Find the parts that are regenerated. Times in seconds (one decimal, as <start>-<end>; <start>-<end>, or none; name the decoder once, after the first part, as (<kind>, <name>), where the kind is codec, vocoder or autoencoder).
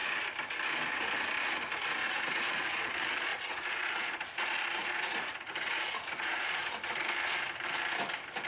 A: 2.0-2.9 (vocoder, Vocos); 3.3-6.7